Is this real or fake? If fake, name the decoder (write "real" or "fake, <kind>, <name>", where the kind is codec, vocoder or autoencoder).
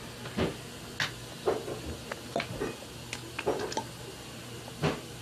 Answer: real